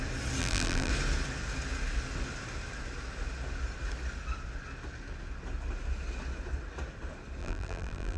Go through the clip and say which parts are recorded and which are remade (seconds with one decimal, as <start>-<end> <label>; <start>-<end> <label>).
0.0-0.4 recorded; 0.4-0.9 remade; 0.9-7.4 recorded; 7.4-8.2 remade